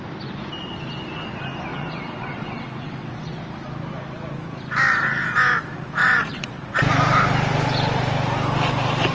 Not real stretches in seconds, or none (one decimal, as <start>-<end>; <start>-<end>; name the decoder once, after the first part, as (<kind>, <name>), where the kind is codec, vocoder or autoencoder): 1.7-3.4 (vocoder, WaveNeXt); 6.0-6.8